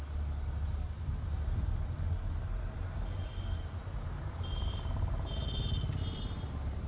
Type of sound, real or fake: real